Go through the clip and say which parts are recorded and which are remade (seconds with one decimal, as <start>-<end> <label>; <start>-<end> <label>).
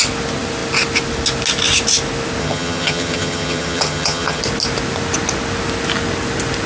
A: 0.0-2.4 recorded; 2.4-4.4 remade; 4.4-6.7 recorded